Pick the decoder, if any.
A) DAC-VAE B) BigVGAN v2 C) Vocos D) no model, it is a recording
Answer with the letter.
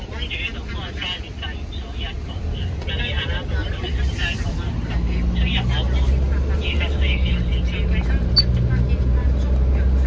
D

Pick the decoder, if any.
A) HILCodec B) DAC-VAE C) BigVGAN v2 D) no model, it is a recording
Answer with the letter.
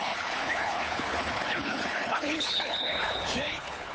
A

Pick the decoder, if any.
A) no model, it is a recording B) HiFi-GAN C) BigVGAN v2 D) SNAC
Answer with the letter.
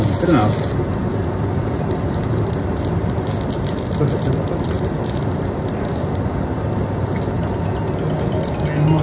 A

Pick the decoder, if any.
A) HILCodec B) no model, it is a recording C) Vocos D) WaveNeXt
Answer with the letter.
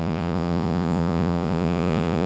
C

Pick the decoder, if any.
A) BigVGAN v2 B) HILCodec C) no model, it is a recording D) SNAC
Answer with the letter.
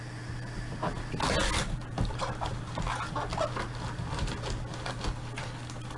C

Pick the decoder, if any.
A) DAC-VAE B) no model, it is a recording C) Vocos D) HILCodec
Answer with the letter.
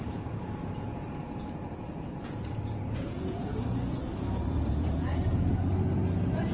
C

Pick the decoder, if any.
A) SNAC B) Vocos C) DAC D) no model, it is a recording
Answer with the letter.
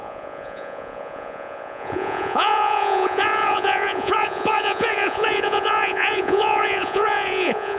B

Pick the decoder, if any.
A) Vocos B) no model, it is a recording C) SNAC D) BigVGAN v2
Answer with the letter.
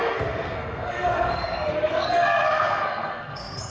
C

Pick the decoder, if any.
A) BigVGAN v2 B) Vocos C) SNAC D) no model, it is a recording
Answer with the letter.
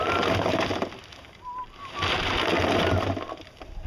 D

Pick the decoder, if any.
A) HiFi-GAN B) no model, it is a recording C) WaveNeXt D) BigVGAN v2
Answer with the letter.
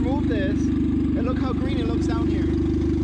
B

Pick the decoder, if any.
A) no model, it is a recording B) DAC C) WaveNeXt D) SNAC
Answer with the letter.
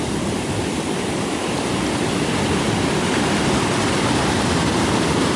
A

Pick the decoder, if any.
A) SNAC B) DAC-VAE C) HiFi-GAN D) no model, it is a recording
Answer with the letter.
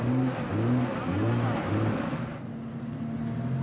D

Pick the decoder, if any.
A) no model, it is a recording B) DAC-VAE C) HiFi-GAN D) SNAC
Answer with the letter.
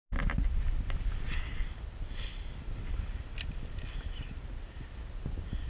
A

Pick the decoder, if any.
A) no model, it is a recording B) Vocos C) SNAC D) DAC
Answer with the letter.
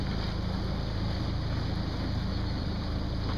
A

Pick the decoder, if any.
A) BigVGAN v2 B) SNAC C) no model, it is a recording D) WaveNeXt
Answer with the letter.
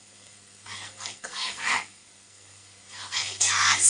B